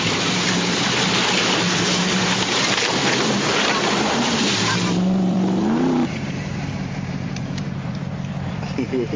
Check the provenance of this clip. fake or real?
fake